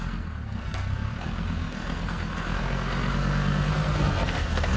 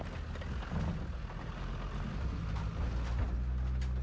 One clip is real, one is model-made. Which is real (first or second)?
second